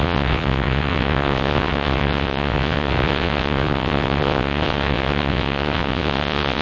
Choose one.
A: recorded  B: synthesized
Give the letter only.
B